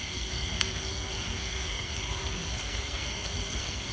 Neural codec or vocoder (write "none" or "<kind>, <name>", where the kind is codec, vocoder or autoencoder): codec, SNAC